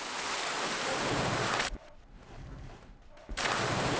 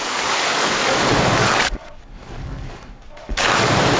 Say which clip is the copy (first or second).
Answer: second